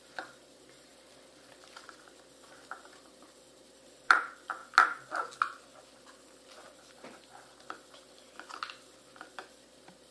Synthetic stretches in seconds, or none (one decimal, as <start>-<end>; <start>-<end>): 0.0-0.9; 2.0-4.6; 9.5-10.1